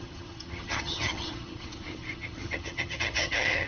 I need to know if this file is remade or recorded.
remade